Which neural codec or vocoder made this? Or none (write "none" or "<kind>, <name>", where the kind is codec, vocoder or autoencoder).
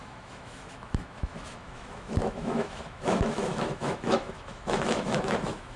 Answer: autoencoder, DAC-VAE